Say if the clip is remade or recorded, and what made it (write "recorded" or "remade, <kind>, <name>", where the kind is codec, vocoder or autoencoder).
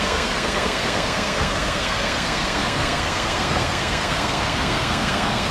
remade, codec, SNAC